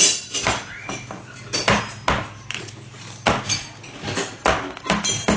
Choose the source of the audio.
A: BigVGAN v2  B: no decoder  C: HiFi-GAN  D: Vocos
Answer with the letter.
B